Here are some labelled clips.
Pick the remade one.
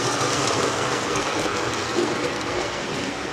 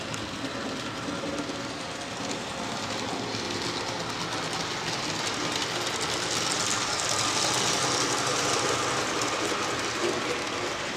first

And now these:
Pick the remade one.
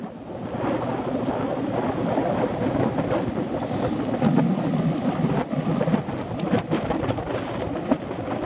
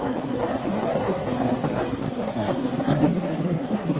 second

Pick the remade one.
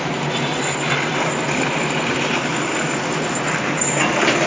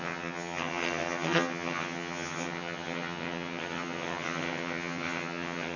second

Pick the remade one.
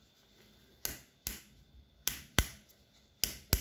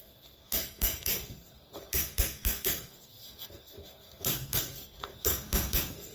second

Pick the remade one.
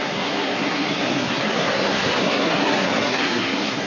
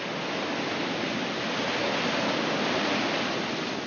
first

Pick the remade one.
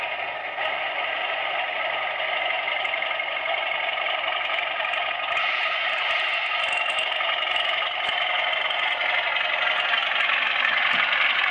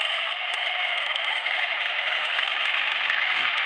second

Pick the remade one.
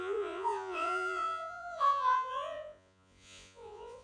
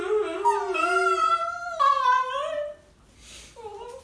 first